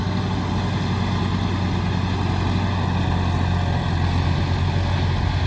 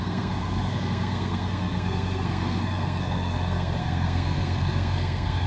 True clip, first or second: first